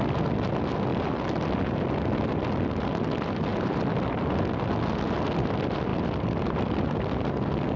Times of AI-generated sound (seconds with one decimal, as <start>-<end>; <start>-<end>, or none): 3.5-4.4; 5.9-7.0